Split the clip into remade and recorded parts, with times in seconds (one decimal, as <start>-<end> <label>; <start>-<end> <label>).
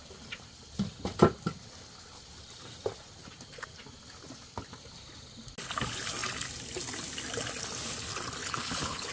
0.0-8.4 recorded; 8.4-9.1 remade